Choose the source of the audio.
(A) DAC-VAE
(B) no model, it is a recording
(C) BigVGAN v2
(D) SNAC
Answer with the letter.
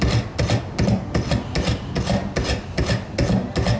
B